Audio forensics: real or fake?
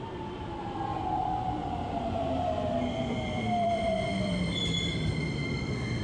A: fake